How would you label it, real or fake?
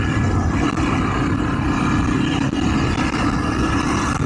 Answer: real